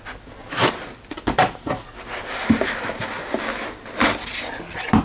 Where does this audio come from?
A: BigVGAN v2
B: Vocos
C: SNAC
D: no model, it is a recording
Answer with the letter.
D